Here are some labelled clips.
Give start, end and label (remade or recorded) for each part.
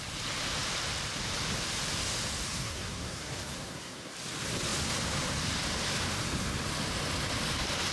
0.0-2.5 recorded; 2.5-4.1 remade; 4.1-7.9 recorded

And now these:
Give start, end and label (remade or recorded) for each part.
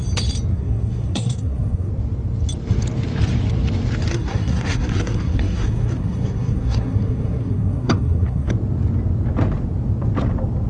0.0-0.5 recorded; 0.5-1.9 remade; 1.9-4.1 recorded; 4.1-8.5 remade; 8.5-10.7 recorded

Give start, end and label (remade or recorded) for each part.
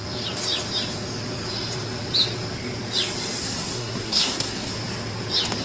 0.0-3.4 recorded; 3.4-4.7 remade; 4.7-5.6 recorded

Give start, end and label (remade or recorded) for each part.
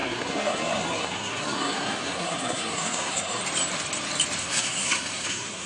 0.0-3.4 remade; 3.4-4.4 recorded; 4.4-5.7 remade